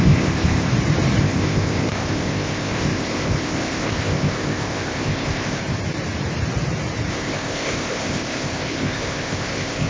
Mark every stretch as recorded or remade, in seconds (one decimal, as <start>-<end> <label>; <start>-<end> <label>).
0.0-0.7 remade; 0.7-1.2 recorded; 1.2-5.6 remade; 5.6-7.1 recorded; 7.1-9.9 remade